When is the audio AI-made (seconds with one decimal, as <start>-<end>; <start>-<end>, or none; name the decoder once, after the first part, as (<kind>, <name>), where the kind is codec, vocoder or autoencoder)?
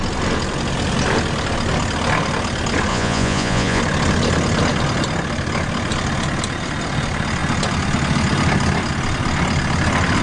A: 2.9-3.8 (vocoder, Vocos)